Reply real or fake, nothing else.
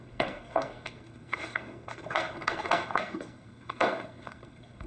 fake